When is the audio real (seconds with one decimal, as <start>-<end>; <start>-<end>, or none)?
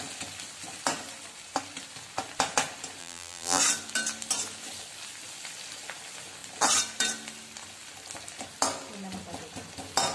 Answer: 0.0-3.0; 3.6-10.1